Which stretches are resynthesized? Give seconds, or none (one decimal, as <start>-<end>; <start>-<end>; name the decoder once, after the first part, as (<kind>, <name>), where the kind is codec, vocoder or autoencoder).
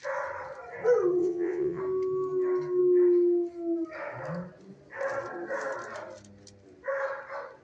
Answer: 1.2-1.8 (vocoder, WaveNeXt)